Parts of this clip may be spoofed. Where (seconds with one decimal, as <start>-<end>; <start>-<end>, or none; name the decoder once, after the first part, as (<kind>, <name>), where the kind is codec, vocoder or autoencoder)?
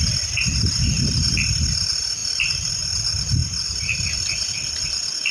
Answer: 2.2-2.7 (vocoder, BigVGAN v2)